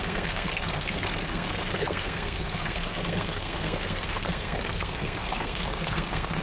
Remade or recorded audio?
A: remade